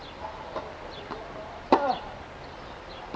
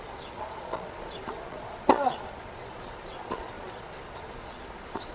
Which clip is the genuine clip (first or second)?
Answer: first